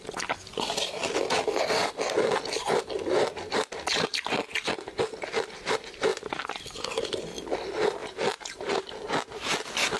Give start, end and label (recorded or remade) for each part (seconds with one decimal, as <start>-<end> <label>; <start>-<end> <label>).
0.0-8.0 recorded; 8.0-9.0 remade; 9.0-10.0 recorded